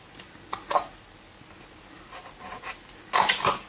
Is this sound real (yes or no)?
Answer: yes